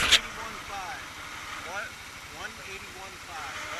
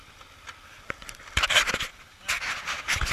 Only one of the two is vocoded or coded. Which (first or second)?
second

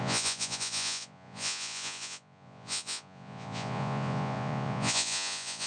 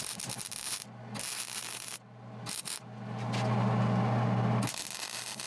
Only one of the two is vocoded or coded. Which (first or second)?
first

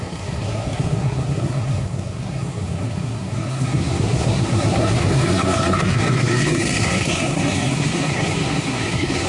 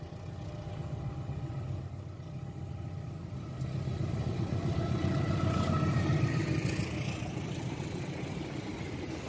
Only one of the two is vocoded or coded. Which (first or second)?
first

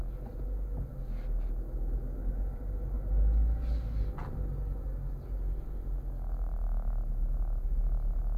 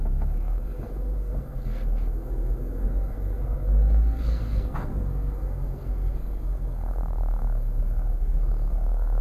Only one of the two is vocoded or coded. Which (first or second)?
second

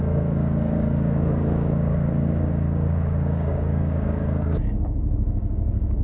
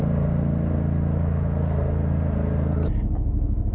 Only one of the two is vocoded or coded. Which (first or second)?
first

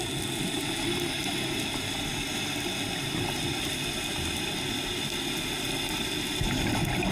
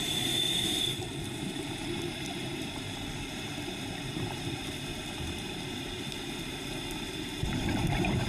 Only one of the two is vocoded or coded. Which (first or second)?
second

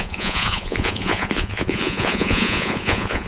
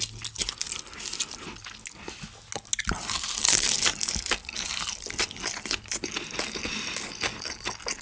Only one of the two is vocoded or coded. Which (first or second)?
first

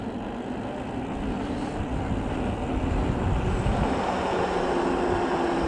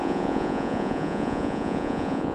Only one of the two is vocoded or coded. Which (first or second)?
second